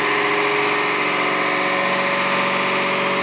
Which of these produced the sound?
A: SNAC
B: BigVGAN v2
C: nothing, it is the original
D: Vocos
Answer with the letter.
C